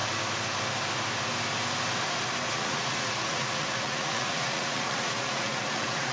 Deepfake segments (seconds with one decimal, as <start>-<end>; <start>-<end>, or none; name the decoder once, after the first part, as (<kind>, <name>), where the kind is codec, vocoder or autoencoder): 2.5-6.1 (vocoder, Vocos)